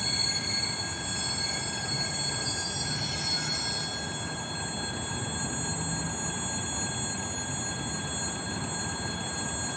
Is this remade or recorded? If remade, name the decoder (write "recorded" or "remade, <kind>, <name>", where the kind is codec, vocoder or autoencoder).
recorded